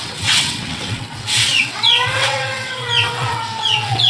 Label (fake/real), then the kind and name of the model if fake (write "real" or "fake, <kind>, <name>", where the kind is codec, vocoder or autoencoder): fake, vocoder, WaveNeXt